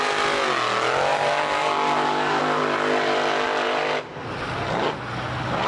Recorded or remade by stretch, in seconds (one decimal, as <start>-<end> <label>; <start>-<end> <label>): 0.0-1.1 recorded; 1.1-2.4 remade; 2.4-5.7 recorded